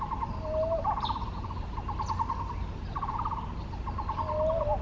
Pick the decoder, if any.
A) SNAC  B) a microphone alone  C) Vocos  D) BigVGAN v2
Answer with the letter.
B